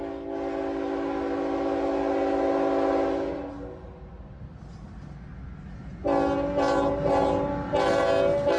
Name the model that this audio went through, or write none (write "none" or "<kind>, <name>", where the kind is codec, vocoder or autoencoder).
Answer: none